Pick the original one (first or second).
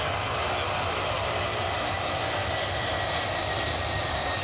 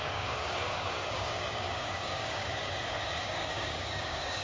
first